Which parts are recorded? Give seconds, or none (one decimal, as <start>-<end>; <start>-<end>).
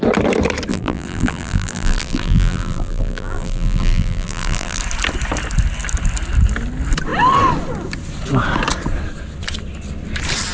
0.0-0.7; 4.8-10.5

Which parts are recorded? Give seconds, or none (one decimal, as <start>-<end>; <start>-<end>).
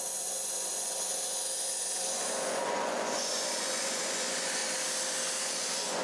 4.6-5.4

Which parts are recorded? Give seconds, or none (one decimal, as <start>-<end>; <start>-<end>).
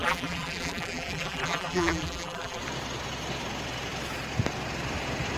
2.6-5.4